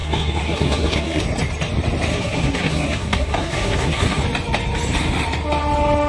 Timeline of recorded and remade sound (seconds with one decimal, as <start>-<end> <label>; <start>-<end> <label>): 0.0-1.2 remade; 1.2-2.1 recorded; 2.1-4.2 remade; 4.2-6.1 recorded